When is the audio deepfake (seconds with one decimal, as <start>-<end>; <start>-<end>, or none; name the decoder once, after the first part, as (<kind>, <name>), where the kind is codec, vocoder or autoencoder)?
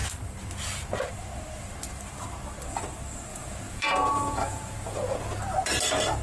3.3-5.4 (vocoder, Vocos)